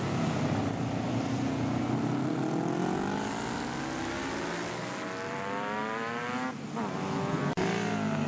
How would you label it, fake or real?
real